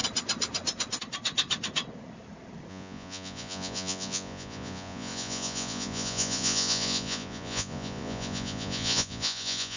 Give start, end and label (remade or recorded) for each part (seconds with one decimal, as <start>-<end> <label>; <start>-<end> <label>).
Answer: 0.0-2.7 recorded; 2.7-9.8 remade